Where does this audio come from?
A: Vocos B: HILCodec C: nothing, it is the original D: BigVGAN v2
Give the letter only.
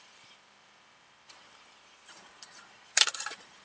D